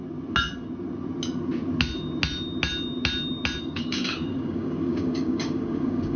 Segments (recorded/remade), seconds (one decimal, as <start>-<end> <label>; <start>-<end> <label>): 0.0-3.6 recorded; 3.6-6.2 remade

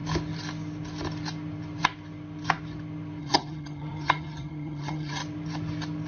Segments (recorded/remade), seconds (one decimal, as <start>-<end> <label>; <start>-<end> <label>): 0.0-3.2 recorded; 3.2-5.2 remade; 5.2-6.1 recorded

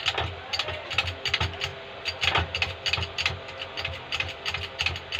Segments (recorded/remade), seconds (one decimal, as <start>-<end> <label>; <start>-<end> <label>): 0.0-5.2 recorded

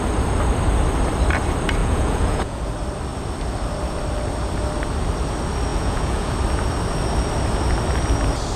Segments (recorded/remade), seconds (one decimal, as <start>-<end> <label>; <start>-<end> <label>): 0.0-1.8 recorded; 1.8-2.6 remade; 2.6-5.7 recorded; 5.7-6.3 remade; 6.3-8.6 recorded

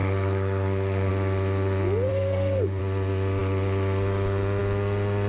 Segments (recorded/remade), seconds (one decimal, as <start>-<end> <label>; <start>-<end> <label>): 0.0-1.1 remade; 1.1-2.1 recorded; 2.1-2.8 remade; 2.8-5.3 recorded

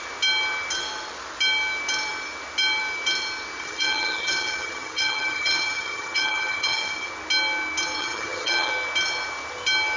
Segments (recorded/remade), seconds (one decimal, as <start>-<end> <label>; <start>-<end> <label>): 0.0-3.6 recorded; 3.6-7.1 remade; 7.1-8.0 recorded; 8.0-8.7 remade; 8.7-10.0 recorded

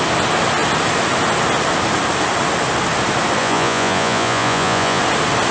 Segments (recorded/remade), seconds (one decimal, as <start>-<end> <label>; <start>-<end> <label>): 0.0-3.4 recorded; 3.4-5.0 remade; 5.0-5.5 recorded

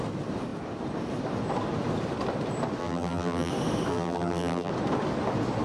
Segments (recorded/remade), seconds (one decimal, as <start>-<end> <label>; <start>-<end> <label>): 0.0-2.8 recorded; 2.8-3.5 remade; 3.5-3.9 recorded; 3.9-4.7 remade; 4.7-5.6 recorded